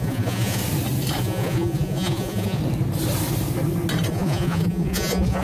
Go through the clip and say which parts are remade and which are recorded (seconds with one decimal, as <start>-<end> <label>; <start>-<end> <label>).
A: 0.0-0.6 remade; 0.6-1.2 recorded; 1.2-2.6 remade; 2.6-4.1 recorded; 4.1-5.4 remade